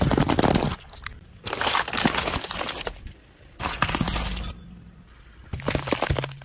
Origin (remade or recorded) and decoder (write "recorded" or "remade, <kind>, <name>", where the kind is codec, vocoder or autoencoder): recorded